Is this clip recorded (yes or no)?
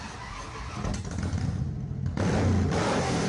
yes